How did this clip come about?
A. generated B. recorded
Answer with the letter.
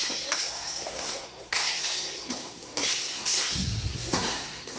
A